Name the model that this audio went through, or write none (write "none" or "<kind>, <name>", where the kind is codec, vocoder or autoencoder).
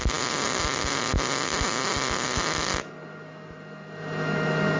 none